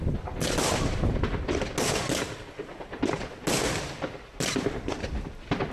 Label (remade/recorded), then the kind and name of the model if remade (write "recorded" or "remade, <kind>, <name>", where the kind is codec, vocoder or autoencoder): recorded